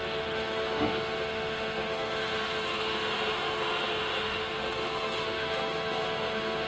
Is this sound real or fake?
fake